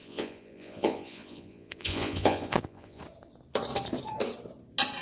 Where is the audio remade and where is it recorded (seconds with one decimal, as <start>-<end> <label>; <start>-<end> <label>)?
0.0-3.0 remade; 3.0-5.0 recorded

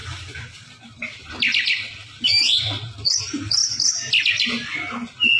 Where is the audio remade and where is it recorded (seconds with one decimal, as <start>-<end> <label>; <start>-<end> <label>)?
0.0-3.2 remade; 3.2-5.4 recorded

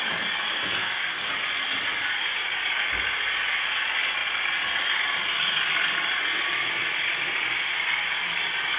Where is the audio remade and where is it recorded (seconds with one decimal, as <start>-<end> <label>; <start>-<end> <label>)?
0.0-0.8 recorded; 0.8-1.3 remade; 1.3-1.9 recorded; 1.9-2.5 remade; 2.5-8.8 recorded